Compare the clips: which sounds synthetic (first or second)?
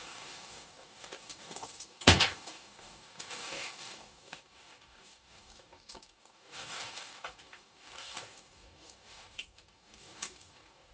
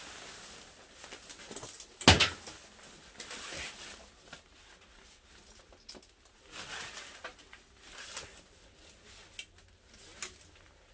first